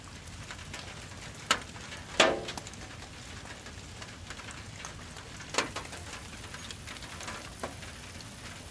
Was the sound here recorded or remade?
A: recorded